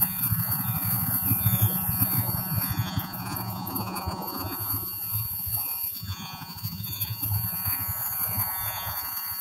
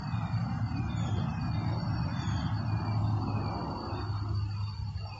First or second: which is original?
second